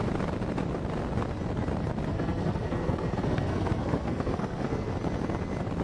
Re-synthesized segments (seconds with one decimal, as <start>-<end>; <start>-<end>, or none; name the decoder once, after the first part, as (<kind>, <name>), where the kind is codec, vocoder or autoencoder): 2.1-4.9 (codec, SNAC)